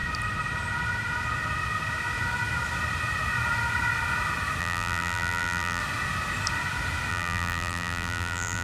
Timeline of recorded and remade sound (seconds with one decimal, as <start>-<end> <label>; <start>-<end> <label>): 0.0-4.6 recorded; 4.6-5.8 remade; 5.8-7.1 recorded; 7.1-8.6 remade